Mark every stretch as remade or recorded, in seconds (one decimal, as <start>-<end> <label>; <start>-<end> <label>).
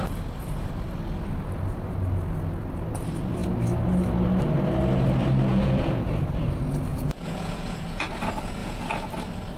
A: 0.0-5.5 recorded; 5.5-6.1 remade; 6.1-6.9 recorded; 6.9-8.1 remade; 8.1-8.6 recorded; 8.6-9.1 remade; 9.1-9.6 recorded